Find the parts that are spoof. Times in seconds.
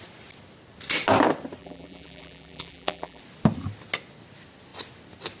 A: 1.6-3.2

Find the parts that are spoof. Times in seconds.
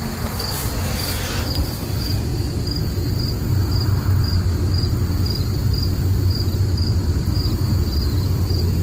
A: 7.2-7.8